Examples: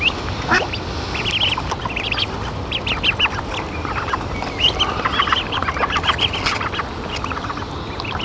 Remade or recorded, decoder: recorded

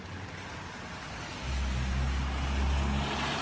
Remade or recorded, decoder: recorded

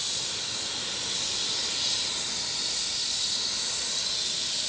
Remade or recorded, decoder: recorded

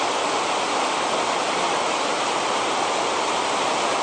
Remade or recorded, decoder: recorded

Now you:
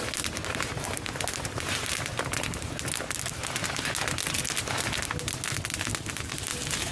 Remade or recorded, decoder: recorded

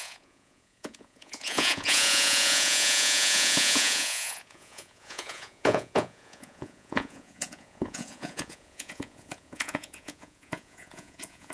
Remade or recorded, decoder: remade, vocoder, Vocos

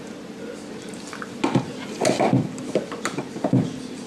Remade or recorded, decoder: recorded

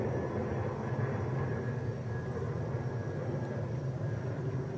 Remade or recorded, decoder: recorded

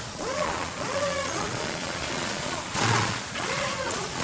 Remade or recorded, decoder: remade, vocoder, Vocos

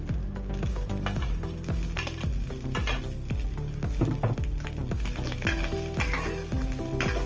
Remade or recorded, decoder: recorded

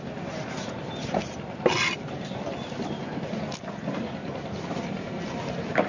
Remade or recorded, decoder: recorded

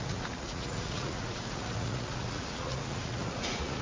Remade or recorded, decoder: remade, vocoder, Vocos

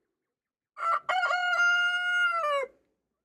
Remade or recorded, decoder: recorded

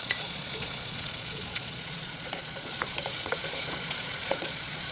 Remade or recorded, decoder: remade, vocoder, Vocos